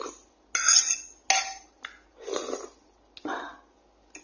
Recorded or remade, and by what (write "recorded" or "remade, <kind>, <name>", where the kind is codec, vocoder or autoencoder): recorded